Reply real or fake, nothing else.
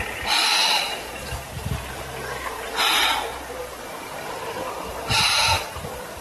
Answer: fake